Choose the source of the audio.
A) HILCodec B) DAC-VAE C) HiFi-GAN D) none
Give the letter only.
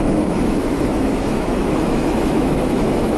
B